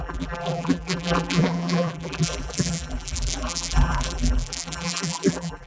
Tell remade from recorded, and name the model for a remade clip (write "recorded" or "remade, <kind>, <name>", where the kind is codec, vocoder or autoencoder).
remade, vocoder, BigVGAN v2